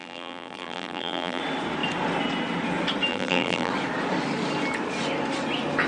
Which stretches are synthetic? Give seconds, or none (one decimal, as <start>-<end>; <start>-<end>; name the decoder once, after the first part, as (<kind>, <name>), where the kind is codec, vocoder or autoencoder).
0.0-1.4 (vocoder, BigVGAN v2); 3.1-3.7